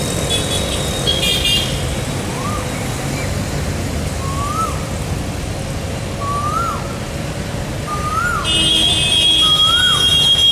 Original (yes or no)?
yes